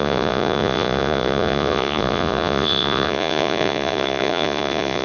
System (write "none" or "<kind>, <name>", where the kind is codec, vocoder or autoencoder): vocoder, Vocos